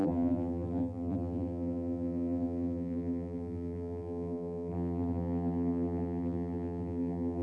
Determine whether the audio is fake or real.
fake